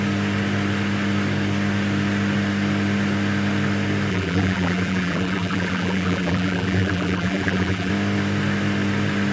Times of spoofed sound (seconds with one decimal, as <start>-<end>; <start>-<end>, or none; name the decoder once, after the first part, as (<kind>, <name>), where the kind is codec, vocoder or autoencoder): 4.1-7.9 (vocoder, BigVGAN v2)